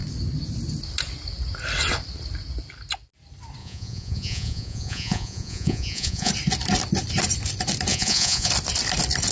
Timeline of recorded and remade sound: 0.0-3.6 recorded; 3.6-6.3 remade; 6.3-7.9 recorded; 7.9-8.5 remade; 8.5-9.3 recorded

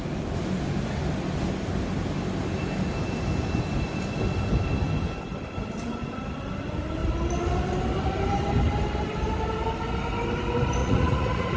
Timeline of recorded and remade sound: 0.0-10.8 recorded; 10.8-11.6 remade

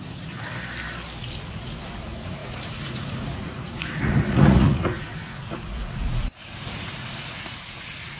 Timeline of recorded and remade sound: 0.0-0.5 remade; 0.5-1.2 recorded; 1.2-8.2 remade

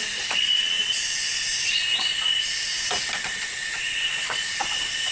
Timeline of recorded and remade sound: 0.0-2.7 remade; 2.7-3.2 recorded; 3.2-5.1 remade

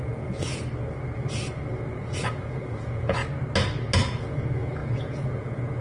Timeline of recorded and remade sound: 0.0-0.5 remade; 0.5-2.0 recorded; 2.0-3.2 remade; 3.2-4.1 recorded; 4.1-5.8 remade

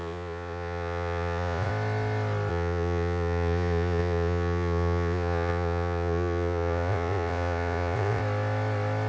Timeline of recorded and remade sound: 0.0-1.7 remade; 1.7-2.5 recorded; 2.5-8.2 remade; 8.2-9.1 recorded

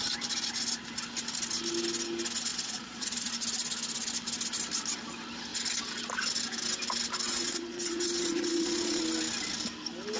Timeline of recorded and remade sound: 0.0-2.5 recorded; 2.5-3.3 remade; 3.3-7.3 recorded; 7.3-9.0 remade; 9.0-10.2 recorded

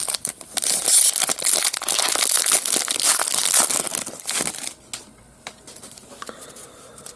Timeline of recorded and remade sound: 0.0-7.2 recorded